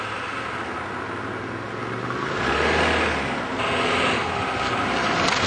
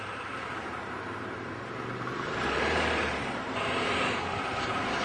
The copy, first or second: second